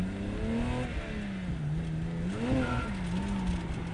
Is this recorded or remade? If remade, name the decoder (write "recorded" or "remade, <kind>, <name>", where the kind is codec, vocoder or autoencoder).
recorded